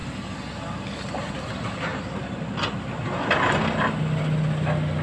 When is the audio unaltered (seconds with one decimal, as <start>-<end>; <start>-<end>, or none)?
0.0-5.0